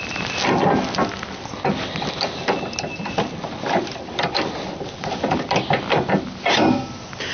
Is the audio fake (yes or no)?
no